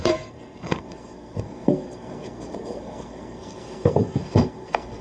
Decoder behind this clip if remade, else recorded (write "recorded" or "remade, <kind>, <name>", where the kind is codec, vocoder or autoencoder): remade, codec, SNAC